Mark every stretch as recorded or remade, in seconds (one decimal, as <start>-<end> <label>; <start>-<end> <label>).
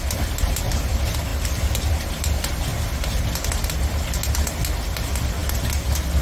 0.0-1.3 recorded; 1.3-1.9 remade; 1.9-6.2 recorded